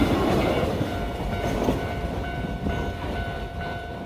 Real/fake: fake